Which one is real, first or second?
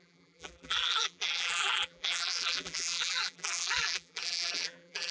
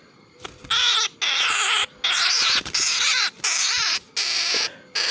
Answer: second